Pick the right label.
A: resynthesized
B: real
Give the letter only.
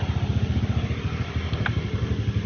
B